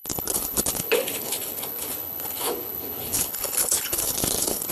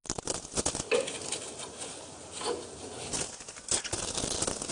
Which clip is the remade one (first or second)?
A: first